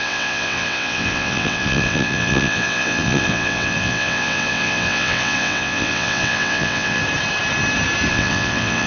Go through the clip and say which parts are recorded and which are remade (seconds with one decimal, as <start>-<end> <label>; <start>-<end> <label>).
0.0-7.0 remade; 7.0-8.1 recorded; 8.1-8.9 remade